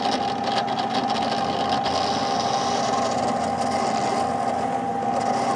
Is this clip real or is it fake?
real